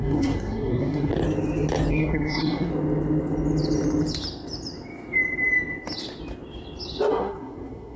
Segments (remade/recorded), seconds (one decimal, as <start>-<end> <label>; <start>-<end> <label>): 0.0-1.1 remade; 1.1-1.9 recorded; 1.9-2.7 remade; 2.7-7.1 recorded; 7.1-8.0 remade

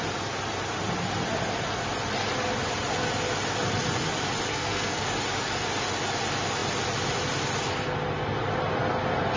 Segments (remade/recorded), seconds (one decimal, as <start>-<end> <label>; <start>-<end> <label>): 0.0-4.5 recorded; 4.5-5.1 remade; 5.1-9.4 recorded

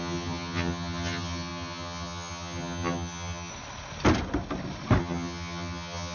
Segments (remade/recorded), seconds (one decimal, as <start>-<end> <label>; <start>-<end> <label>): 0.0-3.5 remade; 3.5-5.0 recorded; 5.0-6.1 remade

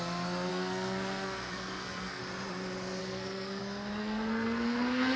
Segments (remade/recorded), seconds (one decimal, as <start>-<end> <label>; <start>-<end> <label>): 0.0-0.5 recorded; 0.5-2.2 remade; 2.2-3.0 recorded; 3.0-3.6 remade; 3.6-4.0 recorded; 4.0-5.2 remade

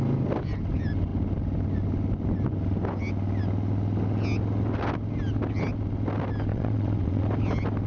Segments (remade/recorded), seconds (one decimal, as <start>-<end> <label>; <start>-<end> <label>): 0.0-6.5 recorded; 6.5-7.2 remade; 7.2-7.9 recorded